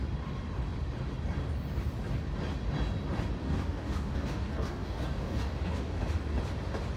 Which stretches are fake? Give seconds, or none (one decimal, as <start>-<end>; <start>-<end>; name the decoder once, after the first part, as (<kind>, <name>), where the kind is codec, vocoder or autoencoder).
3.4-6.0 (codec, DAC)